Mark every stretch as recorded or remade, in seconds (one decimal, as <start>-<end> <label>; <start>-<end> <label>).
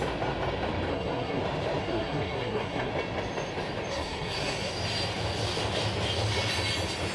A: 0.0-0.9 recorded; 0.9-1.4 remade; 1.4-1.8 recorded; 1.8-2.9 remade; 2.9-3.9 recorded; 3.9-4.7 remade; 4.7-7.1 recorded